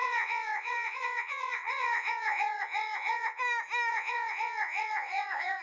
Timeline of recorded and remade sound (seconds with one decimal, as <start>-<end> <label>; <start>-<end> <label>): 0.0-3.4 remade; 3.4-3.9 recorded; 3.9-5.6 remade